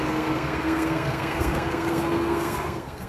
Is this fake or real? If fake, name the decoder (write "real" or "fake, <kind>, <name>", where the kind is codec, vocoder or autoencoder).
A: fake, codec, SNAC